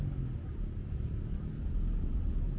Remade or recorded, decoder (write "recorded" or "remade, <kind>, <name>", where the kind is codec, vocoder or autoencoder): recorded